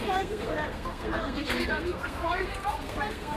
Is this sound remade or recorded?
remade